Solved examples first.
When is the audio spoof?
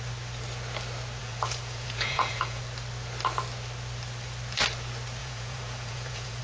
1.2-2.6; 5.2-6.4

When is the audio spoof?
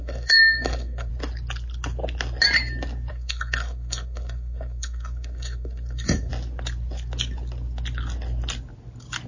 0.0-1.1; 3.1-6.3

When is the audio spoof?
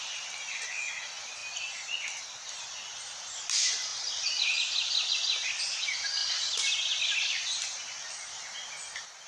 1.4-3.0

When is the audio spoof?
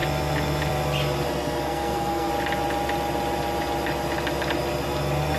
1.3-2.3